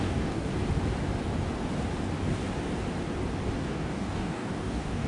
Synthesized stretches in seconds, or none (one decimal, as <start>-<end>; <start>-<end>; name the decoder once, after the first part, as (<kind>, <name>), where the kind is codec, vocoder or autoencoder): 0.0-0.5 (codec, DAC); 3.6-5.1